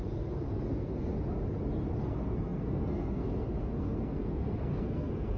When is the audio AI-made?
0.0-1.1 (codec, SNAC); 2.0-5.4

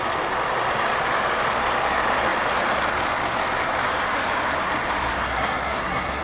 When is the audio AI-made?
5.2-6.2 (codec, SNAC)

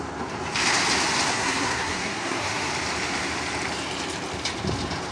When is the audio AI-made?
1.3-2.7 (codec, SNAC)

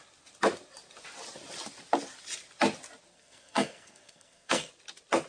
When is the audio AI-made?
3.1-4.7 (codec, SNAC)